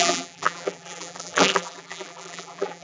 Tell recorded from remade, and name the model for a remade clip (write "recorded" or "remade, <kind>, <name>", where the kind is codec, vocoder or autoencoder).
remade, vocoder, BigVGAN v2